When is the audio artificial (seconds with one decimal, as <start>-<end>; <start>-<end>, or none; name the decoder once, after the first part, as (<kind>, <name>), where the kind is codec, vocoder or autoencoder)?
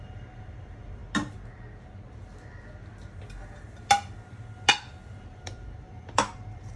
0.0-1.0 (vocoder, BigVGAN v2); 5.1-6.8